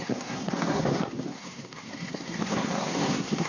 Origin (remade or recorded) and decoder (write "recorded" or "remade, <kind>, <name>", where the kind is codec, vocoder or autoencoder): remade, codec, SNAC